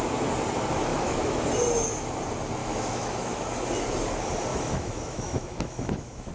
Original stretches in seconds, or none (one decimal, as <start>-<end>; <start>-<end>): 0.0-0.9; 1.4-2.6; 3.4-4.5